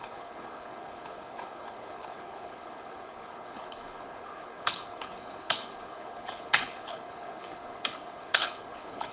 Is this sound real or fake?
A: fake